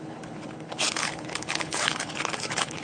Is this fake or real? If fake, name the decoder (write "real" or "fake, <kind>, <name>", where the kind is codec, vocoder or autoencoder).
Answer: fake, codec, HILCodec